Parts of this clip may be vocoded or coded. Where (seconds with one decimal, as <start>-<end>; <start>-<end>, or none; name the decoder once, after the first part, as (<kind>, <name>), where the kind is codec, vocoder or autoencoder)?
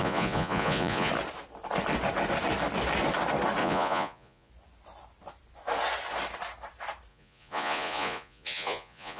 0.0-1.1 (vocoder, Vocos); 3.6-4.5; 7.1-9.2